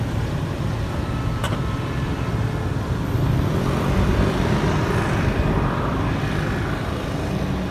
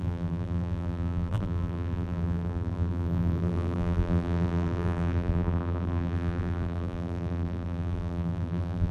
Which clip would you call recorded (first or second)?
first